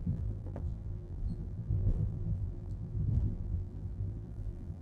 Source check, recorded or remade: remade